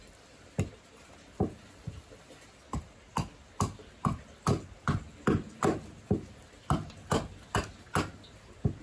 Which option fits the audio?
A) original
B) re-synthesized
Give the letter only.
A